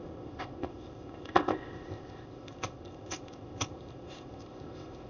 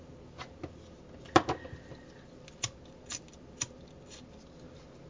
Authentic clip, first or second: second